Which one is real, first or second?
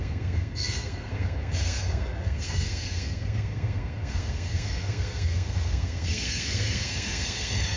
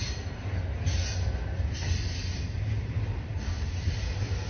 second